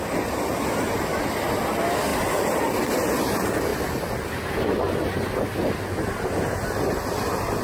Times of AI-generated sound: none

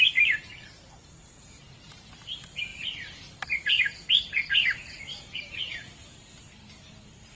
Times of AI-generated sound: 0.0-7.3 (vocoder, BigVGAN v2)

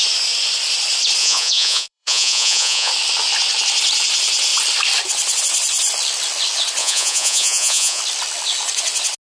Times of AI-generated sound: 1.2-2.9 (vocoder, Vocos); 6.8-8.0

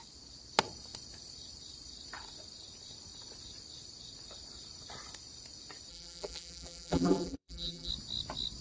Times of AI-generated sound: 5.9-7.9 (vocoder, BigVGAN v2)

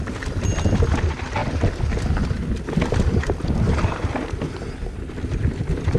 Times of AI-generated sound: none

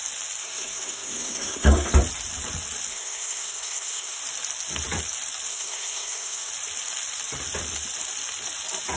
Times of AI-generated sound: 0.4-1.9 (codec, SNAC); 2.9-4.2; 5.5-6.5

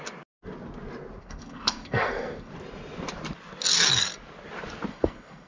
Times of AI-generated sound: 1.2-2.5 (codec, SNAC); 4.9-5.5

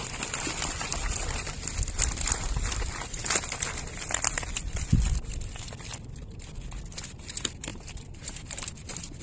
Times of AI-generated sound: 7.7-9.2 (vocoder, BigVGAN v2)